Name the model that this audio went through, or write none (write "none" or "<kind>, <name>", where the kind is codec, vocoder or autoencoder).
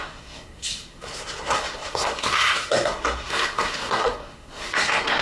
codec, SNAC